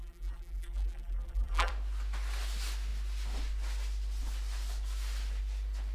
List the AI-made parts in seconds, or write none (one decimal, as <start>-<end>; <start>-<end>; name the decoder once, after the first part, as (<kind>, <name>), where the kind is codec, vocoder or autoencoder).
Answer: 0.0-1.7 (vocoder, BigVGAN v2)